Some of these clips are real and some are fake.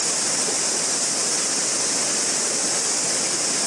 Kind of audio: real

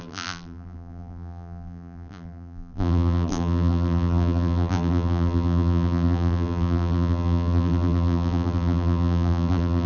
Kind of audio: fake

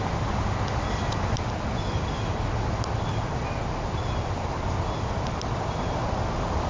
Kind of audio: fake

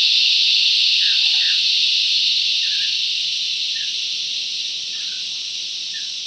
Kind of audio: fake